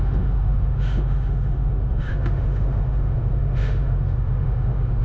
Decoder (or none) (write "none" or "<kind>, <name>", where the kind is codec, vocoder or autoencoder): autoencoder, DAC-VAE